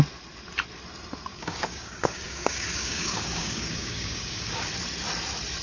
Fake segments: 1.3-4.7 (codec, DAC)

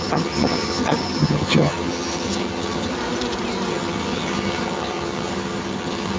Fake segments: 0.0-2.9 (vocoder, HiFi-GAN); 3.7-6.2

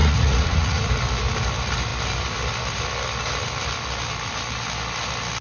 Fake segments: 0.0-0.8 (vocoder, Vocos)

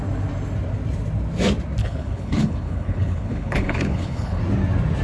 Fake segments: 1.8-4.4 (codec, HILCodec)

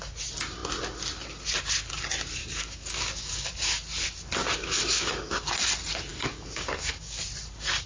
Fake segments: 2.4-3.5 (codec, DAC); 4.4-5.3; 6.1-7.2

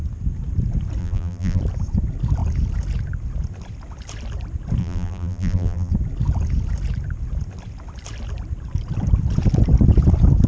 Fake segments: 1.0-1.6 (vocoder, BigVGAN v2); 4.8-5.9

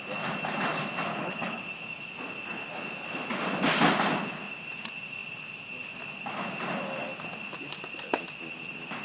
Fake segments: 1.1-1.6 (codec, HILCodec)